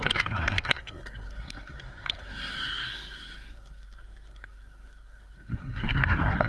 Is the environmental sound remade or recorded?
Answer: remade